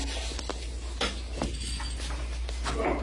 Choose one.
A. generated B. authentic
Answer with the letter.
B